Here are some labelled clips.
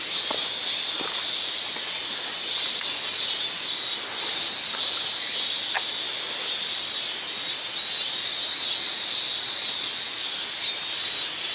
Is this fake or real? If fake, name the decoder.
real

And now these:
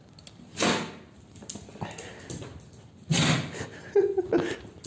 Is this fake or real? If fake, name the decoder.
real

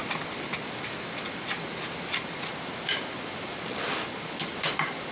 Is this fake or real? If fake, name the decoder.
real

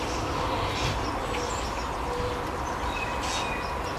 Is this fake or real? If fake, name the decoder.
real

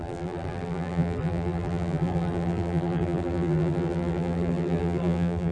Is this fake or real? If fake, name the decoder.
fake, vocoder, BigVGAN v2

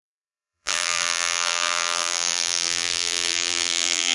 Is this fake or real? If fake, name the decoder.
fake, vocoder, BigVGAN v2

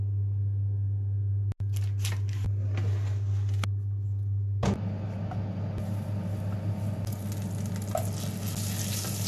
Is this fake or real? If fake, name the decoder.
real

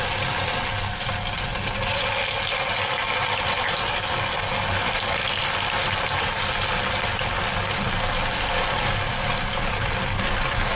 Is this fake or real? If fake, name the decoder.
real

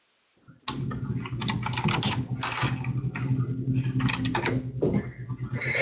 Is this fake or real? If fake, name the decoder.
real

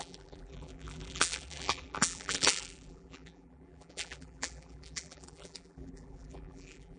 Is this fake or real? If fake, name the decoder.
fake, vocoder, BigVGAN v2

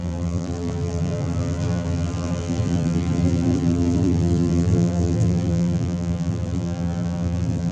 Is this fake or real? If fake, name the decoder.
fake, vocoder, BigVGAN v2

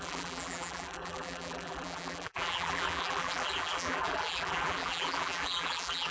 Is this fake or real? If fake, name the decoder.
fake, vocoder, BigVGAN v2